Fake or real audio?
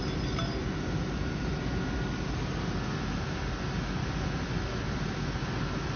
real